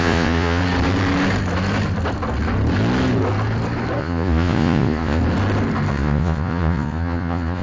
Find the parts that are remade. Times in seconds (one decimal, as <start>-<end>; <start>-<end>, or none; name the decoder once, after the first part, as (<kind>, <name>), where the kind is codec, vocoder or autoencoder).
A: 0.0-0.6 (vocoder, Vocos); 4.0-5.2; 5.9-7.6